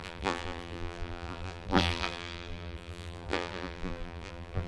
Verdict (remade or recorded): remade